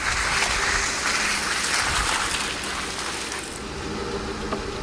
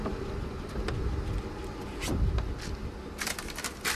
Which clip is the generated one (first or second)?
second